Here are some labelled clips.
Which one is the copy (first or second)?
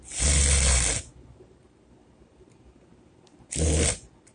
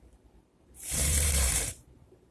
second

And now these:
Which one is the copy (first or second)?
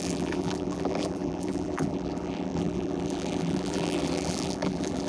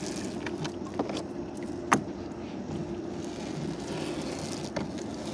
first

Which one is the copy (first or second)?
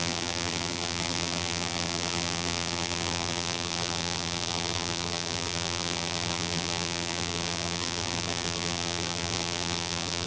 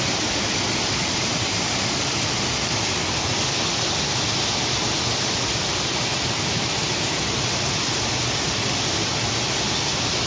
first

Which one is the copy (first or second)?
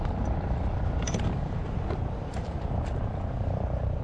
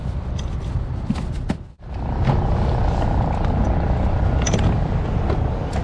first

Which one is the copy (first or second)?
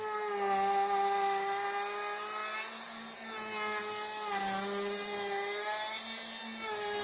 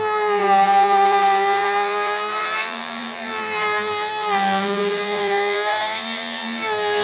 second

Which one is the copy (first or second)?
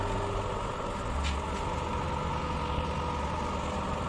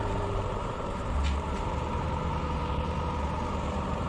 second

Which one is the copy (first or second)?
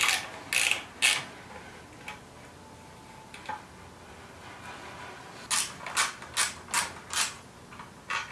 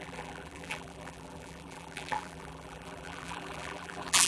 second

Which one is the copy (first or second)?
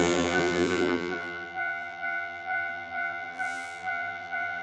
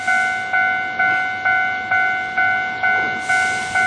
first